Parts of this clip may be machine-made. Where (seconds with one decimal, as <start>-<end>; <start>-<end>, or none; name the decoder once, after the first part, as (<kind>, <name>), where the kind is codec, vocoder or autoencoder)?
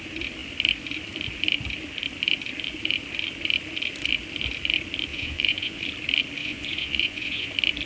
5.1-5.8 (vocoder, Vocos); 6.4-7.5